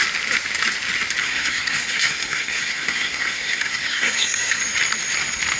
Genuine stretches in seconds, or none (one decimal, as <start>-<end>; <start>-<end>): 0.0-1.2; 4.6-5.6